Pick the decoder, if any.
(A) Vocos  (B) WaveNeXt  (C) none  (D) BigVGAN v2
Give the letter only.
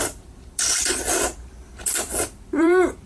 D